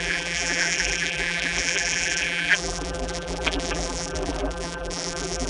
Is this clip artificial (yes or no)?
yes